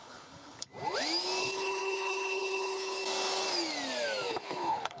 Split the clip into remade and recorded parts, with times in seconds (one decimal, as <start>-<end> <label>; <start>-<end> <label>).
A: 0.0-0.7 remade; 0.7-1.4 recorded; 1.4-3.0 remade; 3.0-4.3 recorded; 4.3-5.0 remade